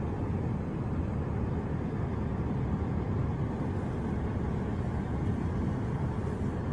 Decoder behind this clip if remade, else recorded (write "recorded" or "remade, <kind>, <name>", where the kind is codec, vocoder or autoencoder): recorded